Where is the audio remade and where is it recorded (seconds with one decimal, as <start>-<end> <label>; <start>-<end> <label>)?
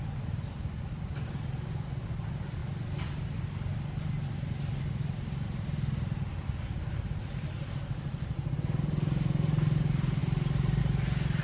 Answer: 0.0-11.4 recorded